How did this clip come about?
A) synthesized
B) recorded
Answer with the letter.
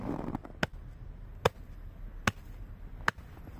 B